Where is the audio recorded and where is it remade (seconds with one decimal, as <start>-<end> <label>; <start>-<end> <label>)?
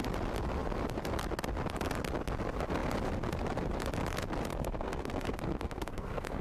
0.0-4.5 recorded; 4.5-6.4 remade